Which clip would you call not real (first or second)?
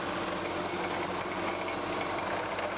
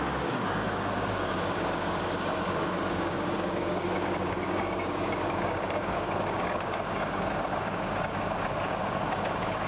second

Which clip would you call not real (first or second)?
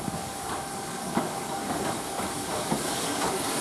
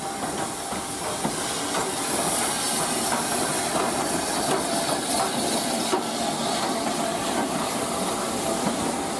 first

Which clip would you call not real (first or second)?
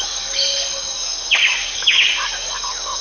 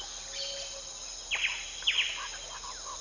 first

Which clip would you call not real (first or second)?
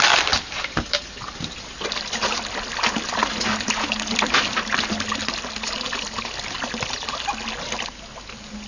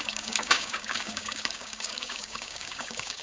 second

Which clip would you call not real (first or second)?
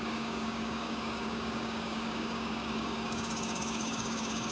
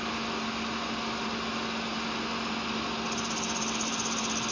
first